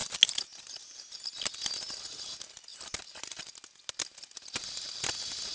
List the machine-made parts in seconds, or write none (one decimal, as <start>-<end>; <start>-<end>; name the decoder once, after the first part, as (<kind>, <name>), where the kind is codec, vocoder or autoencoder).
none